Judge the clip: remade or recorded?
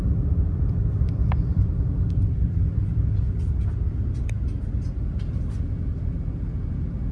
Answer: recorded